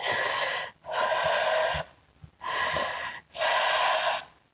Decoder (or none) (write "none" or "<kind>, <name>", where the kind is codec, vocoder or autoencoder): none